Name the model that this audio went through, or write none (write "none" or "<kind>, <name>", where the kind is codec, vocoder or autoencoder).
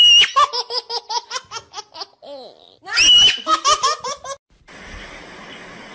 none